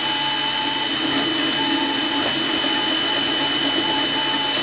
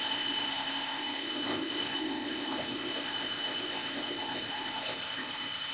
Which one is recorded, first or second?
first